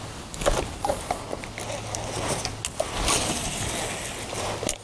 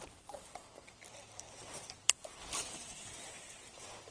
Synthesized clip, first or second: second